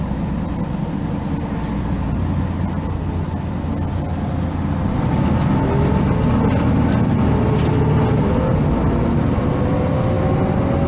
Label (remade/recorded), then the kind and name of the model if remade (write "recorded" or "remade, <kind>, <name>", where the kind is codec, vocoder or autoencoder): recorded